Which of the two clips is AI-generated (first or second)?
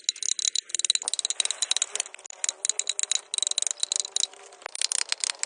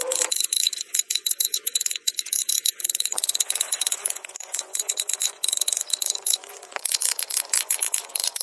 second